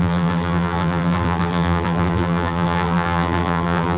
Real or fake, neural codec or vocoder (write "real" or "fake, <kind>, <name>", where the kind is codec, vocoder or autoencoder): fake, vocoder, BigVGAN v2